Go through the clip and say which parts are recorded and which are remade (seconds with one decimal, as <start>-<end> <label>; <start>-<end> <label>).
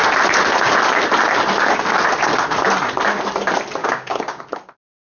0.0-3.8 recorded; 3.8-4.4 remade; 4.4-5.0 recorded